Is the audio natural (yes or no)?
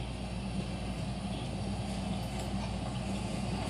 yes